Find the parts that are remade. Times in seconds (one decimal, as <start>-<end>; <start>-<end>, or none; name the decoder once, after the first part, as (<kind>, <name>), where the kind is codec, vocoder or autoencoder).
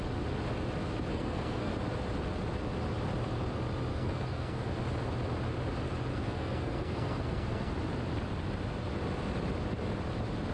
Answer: 1.1-1.7 (codec, SNAC); 3.9-4.6; 6.1-7.7